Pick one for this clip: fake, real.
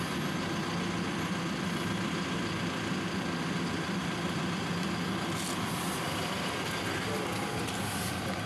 real